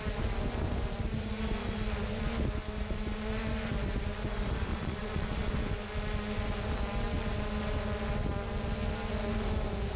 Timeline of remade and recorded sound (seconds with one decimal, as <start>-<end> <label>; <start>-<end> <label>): 0.0-4.7 recorded; 4.7-5.5 remade; 5.5-10.0 recorded